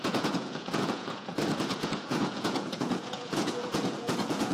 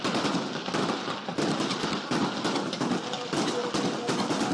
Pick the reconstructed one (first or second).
first